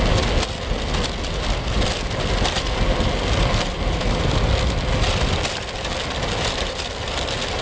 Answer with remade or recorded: recorded